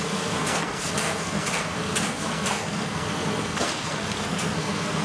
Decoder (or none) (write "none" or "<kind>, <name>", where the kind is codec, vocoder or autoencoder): codec, SNAC